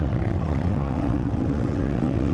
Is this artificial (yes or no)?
yes